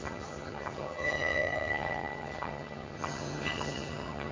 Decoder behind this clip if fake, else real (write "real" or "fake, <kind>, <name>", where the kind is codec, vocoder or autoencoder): fake, vocoder, HiFi-GAN